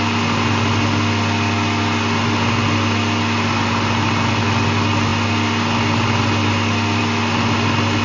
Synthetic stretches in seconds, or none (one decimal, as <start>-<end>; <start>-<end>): none